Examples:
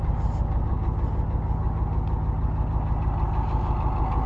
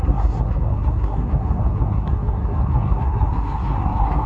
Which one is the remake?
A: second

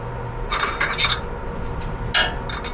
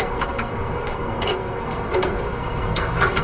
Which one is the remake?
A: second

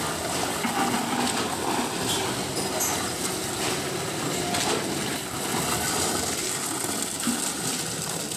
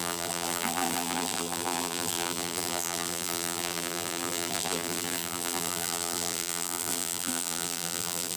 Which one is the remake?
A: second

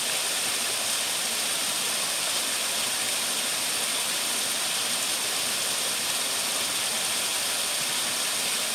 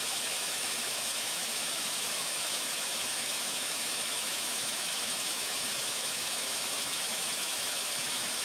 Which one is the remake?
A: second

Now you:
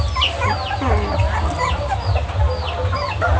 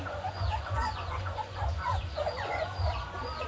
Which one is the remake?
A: second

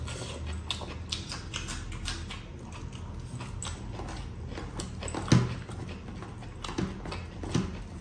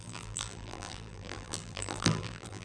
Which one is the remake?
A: second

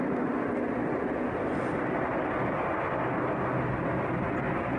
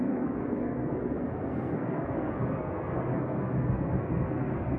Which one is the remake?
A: second